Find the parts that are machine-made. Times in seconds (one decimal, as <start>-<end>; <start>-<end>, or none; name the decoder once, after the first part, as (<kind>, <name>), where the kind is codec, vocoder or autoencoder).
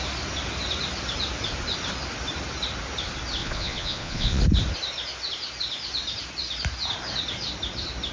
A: 3.4-4.4 (vocoder, Vocos)